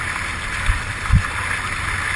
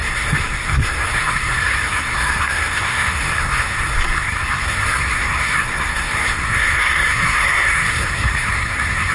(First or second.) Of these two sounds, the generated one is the second